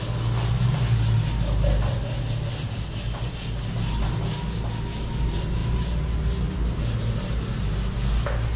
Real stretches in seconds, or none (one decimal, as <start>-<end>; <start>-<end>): 0.0-8.6